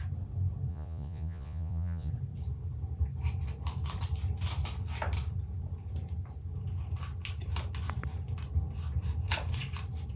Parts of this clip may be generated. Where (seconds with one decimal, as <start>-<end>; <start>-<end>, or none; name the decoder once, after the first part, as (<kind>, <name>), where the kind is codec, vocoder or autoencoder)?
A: 0.7-2.1 (vocoder, Vocos)